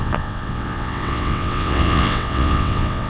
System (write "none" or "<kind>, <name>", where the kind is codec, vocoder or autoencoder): vocoder, WaveNeXt